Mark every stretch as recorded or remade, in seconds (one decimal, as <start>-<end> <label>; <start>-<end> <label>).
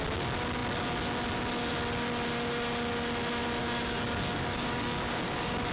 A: 0.0-3.6 recorded; 3.6-5.7 remade